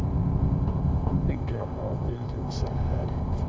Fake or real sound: fake